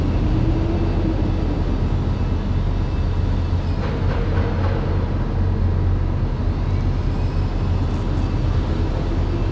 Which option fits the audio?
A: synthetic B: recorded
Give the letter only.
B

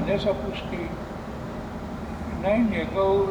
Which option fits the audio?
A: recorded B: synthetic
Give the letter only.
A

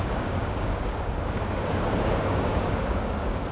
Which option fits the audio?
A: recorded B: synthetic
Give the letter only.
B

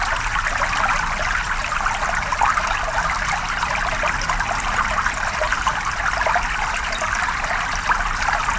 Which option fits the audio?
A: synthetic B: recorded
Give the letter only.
B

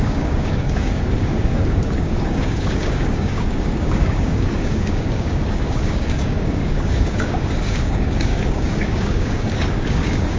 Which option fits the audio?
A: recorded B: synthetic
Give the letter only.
B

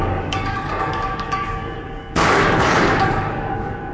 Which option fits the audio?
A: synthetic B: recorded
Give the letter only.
A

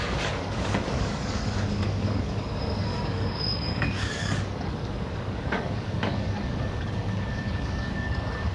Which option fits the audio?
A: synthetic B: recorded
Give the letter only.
A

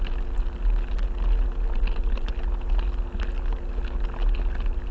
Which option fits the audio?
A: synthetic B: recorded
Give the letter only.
B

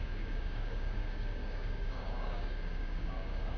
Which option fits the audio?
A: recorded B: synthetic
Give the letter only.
B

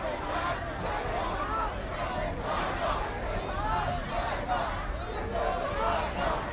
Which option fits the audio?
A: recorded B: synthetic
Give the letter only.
A